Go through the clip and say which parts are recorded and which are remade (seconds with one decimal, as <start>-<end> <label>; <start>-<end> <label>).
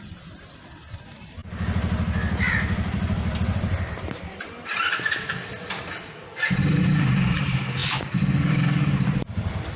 0.0-1.4 remade; 1.4-2.5 recorded; 2.5-9.8 remade